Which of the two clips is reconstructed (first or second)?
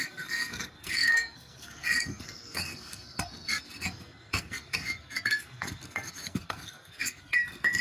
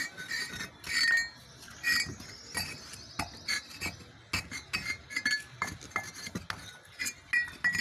first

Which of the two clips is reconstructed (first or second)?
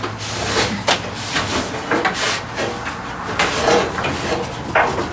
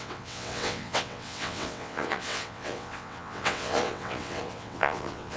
second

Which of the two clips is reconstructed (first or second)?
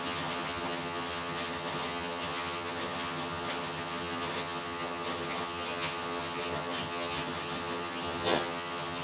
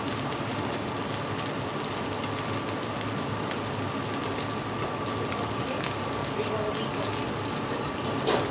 first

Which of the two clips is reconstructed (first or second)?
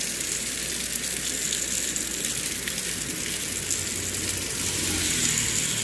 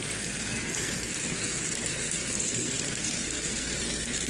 second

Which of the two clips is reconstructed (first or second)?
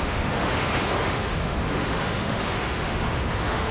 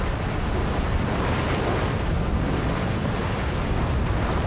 first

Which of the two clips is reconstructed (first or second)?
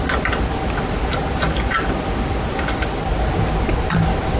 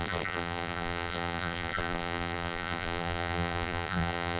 second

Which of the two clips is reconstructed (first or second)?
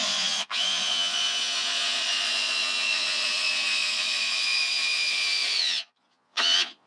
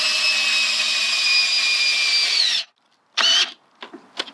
first